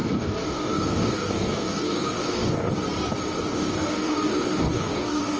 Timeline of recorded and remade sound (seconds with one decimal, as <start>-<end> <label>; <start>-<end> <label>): 0.0-2.7 remade; 2.7-3.5 recorded; 3.5-5.4 remade